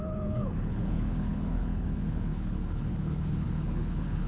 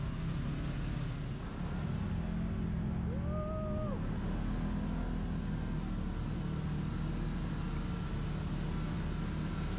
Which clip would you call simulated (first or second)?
first